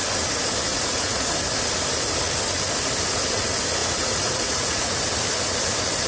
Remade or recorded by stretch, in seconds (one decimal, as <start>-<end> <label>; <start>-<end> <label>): 0.0-0.7 recorded; 0.7-1.4 remade; 1.4-3.8 recorded; 3.8-5.0 remade; 5.0-6.1 recorded